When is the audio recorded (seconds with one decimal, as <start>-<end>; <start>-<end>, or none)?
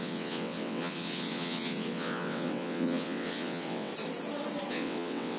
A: 3.9-4.7